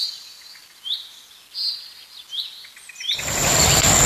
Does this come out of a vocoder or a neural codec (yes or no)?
no